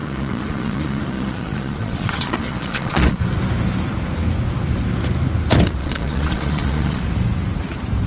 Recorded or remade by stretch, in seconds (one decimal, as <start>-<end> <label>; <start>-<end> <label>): 0.0-3.2 remade; 3.2-5.8 recorded; 5.8-7.0 remade; 7.0-8.1 recorded